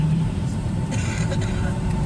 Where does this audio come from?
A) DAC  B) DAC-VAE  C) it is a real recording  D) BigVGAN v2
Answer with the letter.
D